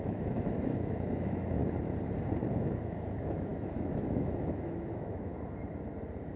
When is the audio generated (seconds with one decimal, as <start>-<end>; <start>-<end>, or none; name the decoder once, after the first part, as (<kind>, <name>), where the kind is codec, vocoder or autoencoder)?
0.0-1.6 (autoencoder, DAC-VAE); 2.5-5.3